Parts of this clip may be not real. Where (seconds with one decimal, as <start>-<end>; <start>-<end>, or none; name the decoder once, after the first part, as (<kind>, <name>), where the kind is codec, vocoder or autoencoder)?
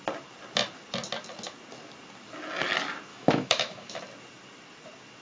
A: 3.1-4.0 (autoencoder, DAC-VAE)